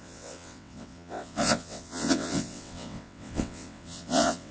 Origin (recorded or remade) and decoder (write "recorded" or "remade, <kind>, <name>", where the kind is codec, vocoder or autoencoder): remade, vocoder, WaveNeXt